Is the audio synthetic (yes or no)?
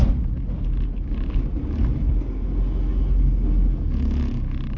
no